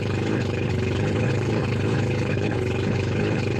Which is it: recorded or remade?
remade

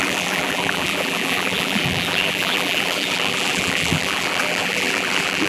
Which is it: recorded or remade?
remade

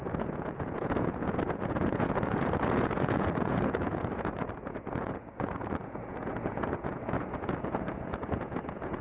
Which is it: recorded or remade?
remade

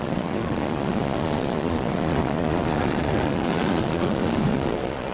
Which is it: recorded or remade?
remade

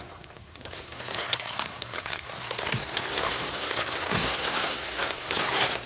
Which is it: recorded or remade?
remade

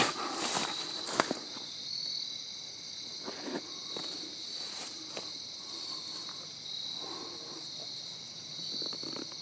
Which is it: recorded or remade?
recorded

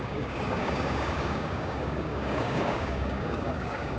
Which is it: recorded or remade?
remade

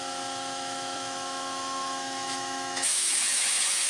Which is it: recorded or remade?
remade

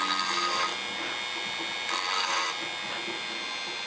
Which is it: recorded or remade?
recorded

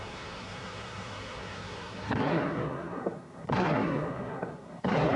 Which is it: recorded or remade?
remade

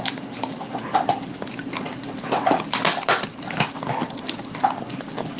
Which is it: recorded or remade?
recorded